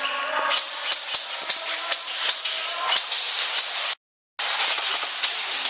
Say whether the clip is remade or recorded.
recorded